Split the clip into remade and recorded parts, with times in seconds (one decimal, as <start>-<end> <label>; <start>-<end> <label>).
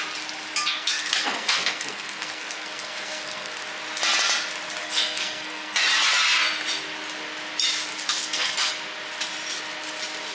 0.0-0.7 recorded; 0.7-3.6 remade; 3.6-4.8 recorded; 4.8-5.8 remade; 5.8-7.9 recorded; 7.9-8.7 remade; 8.7-10.3 recorded